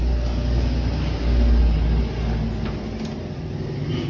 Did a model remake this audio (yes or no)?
no